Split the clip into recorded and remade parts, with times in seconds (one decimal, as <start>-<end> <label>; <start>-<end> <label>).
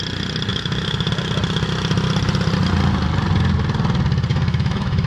0.0-0.5 recorded; 0.5-1.1 remade; 1.1-4.3 recorded; 4.3-5.1 remade